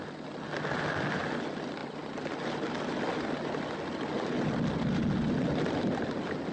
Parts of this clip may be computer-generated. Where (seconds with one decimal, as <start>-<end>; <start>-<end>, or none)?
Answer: none